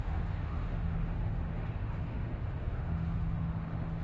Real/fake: fake